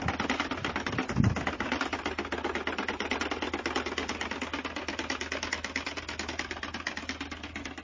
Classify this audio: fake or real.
real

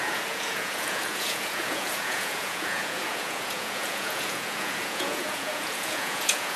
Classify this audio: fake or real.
fake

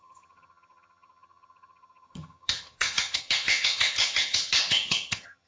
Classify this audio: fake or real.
fake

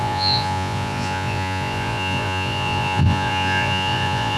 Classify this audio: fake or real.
fake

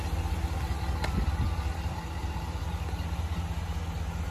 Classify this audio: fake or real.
real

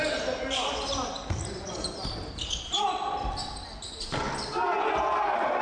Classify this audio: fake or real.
real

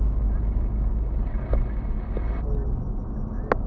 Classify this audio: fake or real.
real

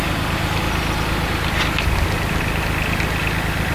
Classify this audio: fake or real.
real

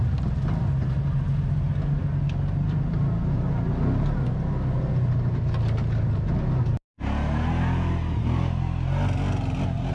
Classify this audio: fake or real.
real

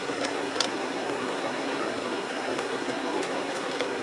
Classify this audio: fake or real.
fake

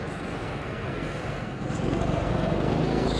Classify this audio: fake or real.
fake